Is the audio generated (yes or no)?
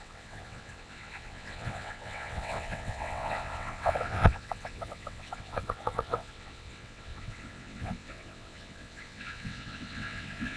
yes